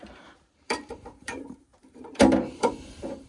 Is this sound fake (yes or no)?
yes